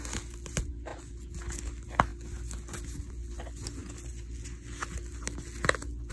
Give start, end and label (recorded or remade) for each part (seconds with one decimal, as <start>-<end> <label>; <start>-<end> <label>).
0.0-6.1 recorded